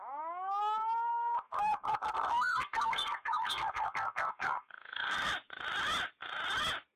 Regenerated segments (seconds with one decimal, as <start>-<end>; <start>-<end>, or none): 1.1-5.3